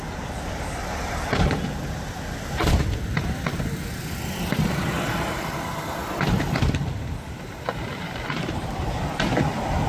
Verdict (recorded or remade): remade